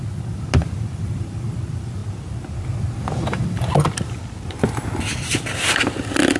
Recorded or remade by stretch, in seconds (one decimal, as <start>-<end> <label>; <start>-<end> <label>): 0.0-6.4 recorded